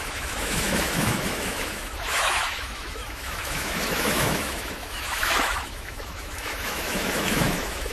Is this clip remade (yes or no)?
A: yes